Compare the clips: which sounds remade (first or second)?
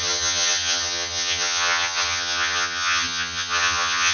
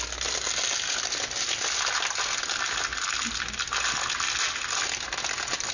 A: first